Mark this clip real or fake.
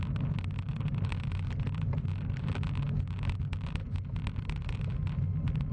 real